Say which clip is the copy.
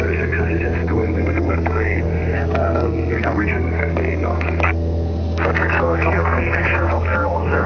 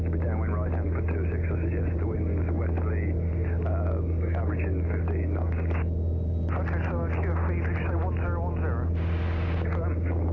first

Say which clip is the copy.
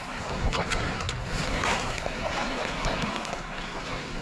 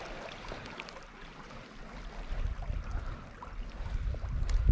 first